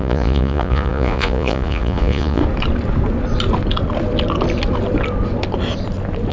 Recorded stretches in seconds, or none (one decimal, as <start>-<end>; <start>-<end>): 2.4-6.3